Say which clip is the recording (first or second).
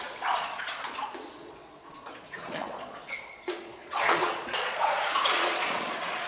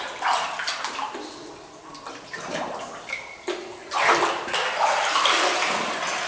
second